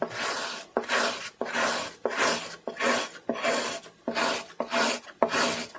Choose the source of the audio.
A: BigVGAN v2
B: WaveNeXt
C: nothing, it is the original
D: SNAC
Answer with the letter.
C